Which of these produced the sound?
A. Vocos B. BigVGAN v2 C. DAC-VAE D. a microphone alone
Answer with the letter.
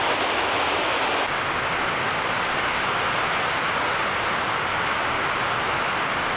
D